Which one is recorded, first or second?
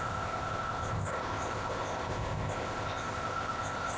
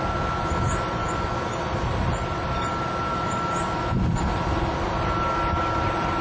second